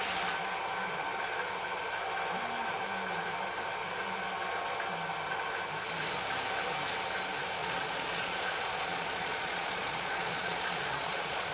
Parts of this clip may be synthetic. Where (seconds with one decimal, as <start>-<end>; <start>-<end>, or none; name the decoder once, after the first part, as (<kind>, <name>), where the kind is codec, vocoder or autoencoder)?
7.6-11.5 (vocoder, Vocos)